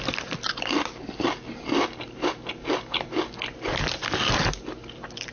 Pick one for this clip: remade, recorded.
recorded